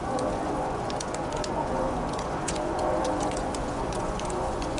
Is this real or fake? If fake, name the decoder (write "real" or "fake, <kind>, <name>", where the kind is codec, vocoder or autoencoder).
fake, vocoder, Vocos